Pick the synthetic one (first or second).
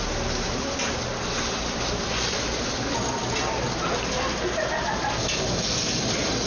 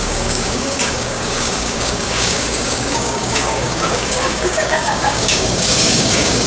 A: second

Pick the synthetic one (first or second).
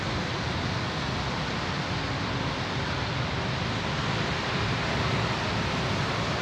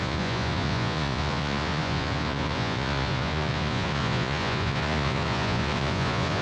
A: second